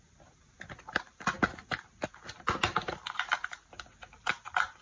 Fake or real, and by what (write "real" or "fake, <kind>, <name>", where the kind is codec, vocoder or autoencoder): real